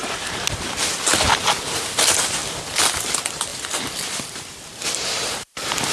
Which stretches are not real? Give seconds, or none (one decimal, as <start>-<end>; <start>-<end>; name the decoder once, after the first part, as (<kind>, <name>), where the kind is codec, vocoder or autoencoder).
2.4-3.0 (vocoder, BigVGAN v2); 3.5-5.9